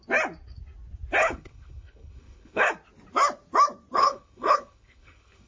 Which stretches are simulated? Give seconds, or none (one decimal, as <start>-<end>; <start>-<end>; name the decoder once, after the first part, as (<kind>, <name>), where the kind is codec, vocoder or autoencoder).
1.2-2.7 (codec, HILCodec); 4.0-5.5